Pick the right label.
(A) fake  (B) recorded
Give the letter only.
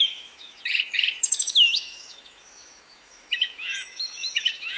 A